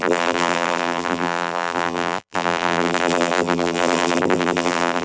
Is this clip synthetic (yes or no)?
yes